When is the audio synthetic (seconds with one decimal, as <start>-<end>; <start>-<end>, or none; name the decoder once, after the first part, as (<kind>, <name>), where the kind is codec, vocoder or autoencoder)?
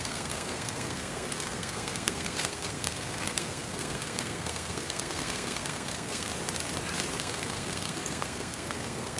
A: 0.0-6.3 (codec, SNAC); 7.2-9.2